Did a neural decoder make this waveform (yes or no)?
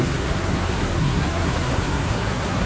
yes